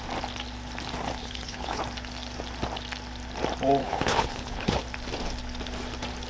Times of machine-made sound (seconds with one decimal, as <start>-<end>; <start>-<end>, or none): 1.2-1.8; 3.8-4.8